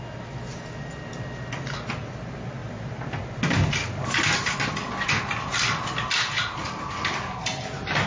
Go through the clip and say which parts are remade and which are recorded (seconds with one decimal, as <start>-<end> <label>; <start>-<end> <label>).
0.0-8.1 recorded